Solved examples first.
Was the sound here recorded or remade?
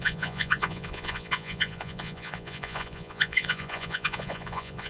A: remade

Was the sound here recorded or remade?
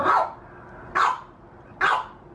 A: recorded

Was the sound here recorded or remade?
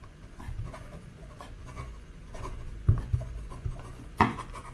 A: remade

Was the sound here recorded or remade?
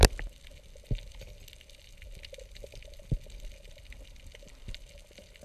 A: recorded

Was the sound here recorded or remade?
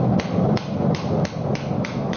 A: recorded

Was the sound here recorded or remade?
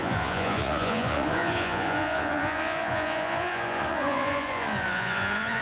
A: remade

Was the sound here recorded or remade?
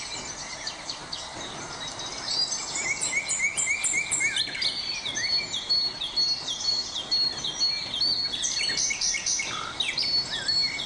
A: recorded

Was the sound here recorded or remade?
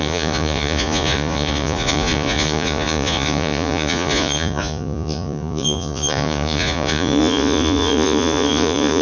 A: remade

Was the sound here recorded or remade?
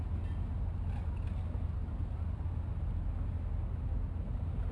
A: recorded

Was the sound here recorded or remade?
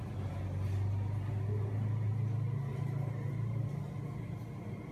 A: recorded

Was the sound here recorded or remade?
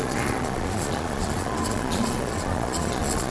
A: remade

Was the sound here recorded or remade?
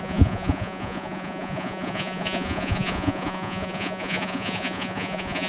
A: remade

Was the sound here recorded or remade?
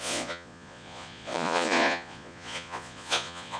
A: remade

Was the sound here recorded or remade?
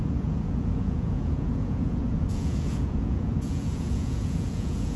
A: remade